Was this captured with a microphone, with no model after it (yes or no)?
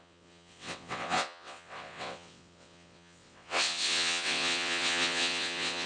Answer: no